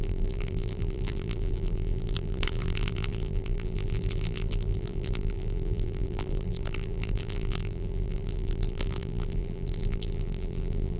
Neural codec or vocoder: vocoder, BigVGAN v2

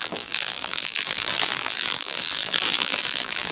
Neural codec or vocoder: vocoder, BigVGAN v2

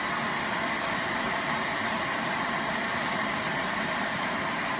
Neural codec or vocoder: vocoder, BigVGAN v2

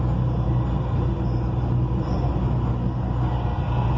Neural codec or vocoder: none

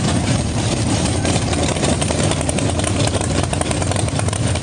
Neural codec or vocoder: vocoder, BigVGAN v2